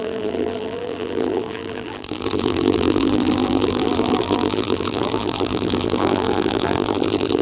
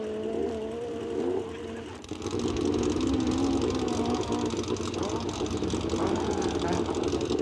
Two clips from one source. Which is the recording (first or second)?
second